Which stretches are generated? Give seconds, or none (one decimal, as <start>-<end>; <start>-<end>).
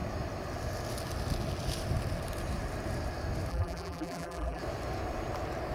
3.5-4.6